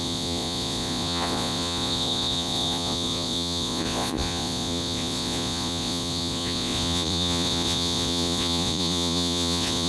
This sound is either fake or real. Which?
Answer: fake